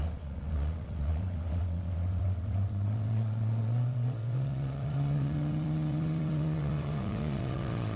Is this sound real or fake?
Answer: fake